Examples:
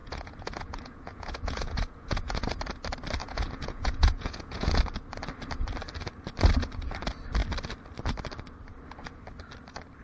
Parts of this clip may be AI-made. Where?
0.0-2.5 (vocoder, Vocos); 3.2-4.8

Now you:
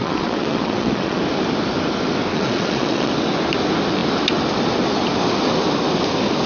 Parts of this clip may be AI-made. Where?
0.0-1.2 (vocoder, Vocos); 2.3-3.1

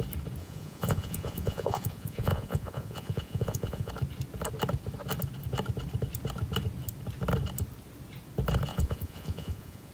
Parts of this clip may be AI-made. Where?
0.4-3.9 (vocoder, Vocos); 8.7-9.9

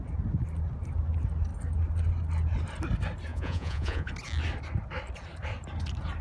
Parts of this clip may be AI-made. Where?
3.3-4.1 (vocoder, Vocos)